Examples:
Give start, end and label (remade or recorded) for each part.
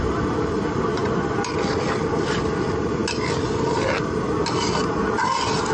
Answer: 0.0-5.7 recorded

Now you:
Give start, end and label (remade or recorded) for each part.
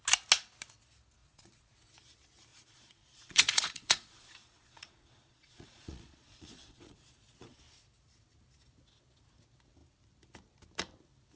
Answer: 0.0-1.2 recorded; 1.2-1.7 remade; 1.7-2.5 recorded; 2.5-7.6 remade; 7.6-11.4 recorded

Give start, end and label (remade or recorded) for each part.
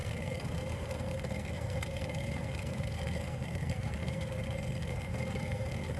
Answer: 0.0-6.0 remade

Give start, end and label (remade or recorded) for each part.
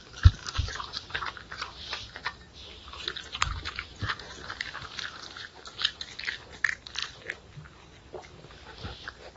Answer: 0.0-3.0 recorded; 3.0-5.9 remade; 5.9-9.4 recorded